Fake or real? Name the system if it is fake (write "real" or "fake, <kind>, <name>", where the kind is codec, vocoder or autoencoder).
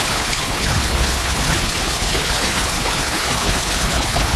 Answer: fake, codec, HILCodec